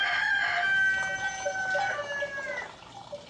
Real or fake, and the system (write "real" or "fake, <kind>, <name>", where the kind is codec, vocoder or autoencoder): real